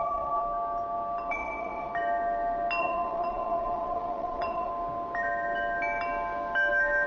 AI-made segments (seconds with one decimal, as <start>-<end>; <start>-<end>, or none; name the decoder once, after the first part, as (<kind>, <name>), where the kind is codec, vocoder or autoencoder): 0.0-0.4 (vocoder, Vocos); 1.3-1.9; 2.8-4.7